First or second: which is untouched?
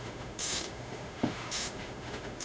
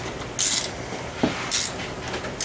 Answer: second